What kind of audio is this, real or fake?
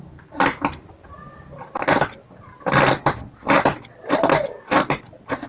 real